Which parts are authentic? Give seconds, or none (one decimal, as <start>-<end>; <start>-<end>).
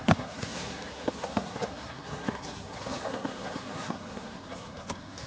none